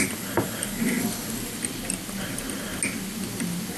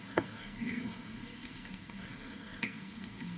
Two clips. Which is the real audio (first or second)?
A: first